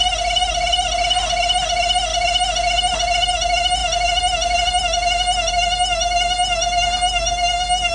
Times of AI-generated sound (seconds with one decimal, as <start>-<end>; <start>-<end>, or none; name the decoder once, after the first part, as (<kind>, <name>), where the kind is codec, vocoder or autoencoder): none